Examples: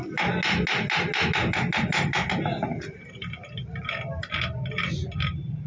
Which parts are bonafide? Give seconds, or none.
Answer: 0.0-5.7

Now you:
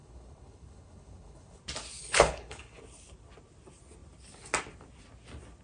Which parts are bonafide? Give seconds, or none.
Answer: 1.6-2.0; 2.8-5.6

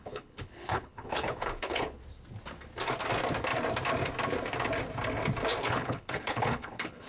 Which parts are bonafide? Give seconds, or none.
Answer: 2.0-5.6

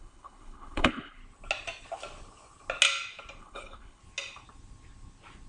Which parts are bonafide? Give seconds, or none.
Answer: 1.2-3.4; 4.0-5.5

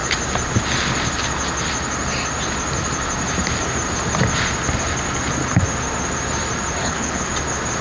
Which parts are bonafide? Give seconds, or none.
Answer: 0.0-6.8; 7.3-7.8

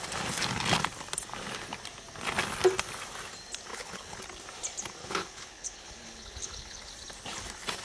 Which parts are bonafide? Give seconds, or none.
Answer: 0.0-3.7; 4.2-5.0; 6.9-7.8

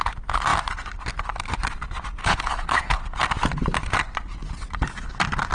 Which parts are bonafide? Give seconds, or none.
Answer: 0.0-2.2; 3.0-5.5

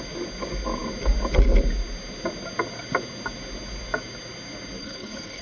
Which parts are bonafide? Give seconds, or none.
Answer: 0.0-4.8